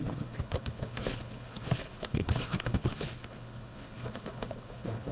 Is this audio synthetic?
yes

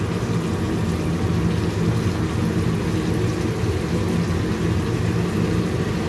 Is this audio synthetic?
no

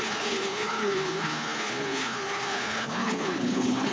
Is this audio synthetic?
yes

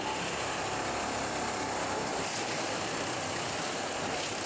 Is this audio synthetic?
no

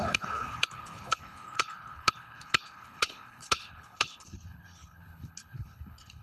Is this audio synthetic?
yes